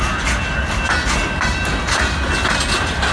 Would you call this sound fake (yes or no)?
no